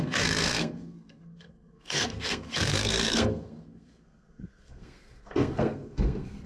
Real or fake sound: fake